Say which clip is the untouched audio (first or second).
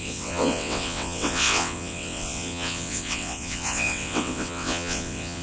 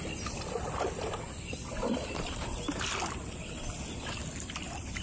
second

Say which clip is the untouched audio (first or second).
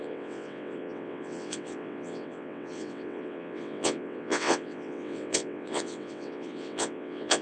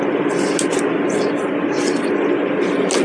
second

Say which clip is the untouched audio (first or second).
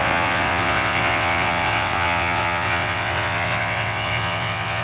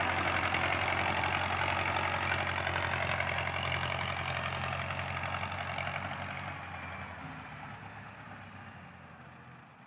second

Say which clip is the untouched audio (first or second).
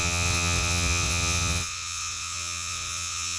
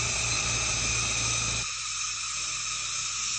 second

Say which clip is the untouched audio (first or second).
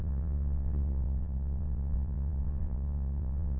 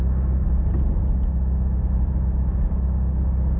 second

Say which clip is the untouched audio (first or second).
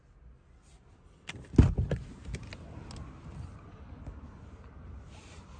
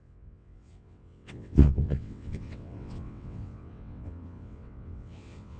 first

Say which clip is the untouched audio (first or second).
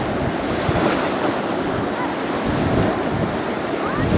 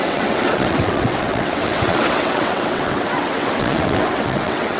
first